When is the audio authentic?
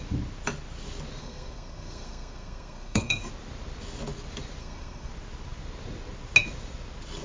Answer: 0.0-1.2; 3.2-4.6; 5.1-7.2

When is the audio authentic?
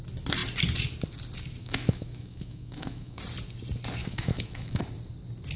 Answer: 0.0-1.6; 3.2-4.0; 4.8-5.6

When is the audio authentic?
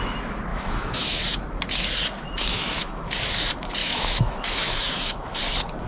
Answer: 0.0-0.5; 1.2-2.5; 3.1-3.8; 5.4-5.9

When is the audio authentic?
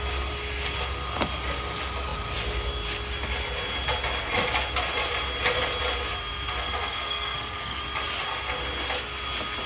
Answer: 0.0-6.6; 7.8-9.7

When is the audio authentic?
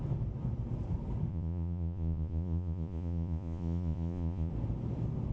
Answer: 0.0-1.3; 4.5-5.3